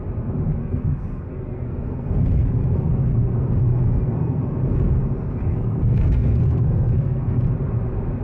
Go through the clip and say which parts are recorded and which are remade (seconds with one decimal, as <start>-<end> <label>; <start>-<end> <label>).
0.0-0.6 recorded; 0.6-5.0 remade; 5.0-5.5 recorded; 5.5-7.4 remade; 7.4-8.2 recorded